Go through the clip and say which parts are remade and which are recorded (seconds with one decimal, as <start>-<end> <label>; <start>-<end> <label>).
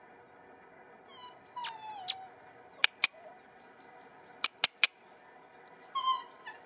0.0-6.7 recorded